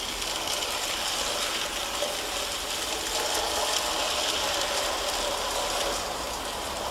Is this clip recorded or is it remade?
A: recorded